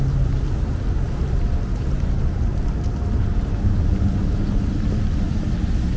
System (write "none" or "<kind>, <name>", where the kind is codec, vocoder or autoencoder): none